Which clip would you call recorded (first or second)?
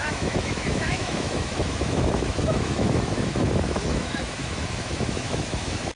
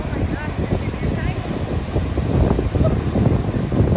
second